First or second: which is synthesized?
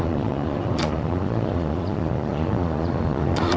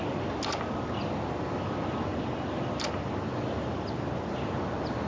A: first